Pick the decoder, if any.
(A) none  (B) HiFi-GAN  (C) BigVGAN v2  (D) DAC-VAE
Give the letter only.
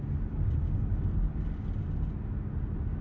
A